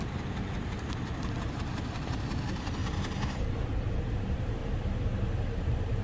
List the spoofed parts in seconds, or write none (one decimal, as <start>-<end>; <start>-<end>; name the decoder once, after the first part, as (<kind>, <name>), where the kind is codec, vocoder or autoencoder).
0.0-2.8 (vocoder, BigVGAN v2); 3.5-4.6; 5.6-6.0